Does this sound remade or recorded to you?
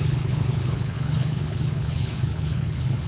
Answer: remade